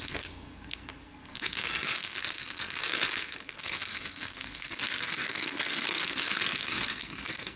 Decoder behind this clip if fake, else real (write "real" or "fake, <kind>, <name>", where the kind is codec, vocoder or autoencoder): fake, codec, SNAC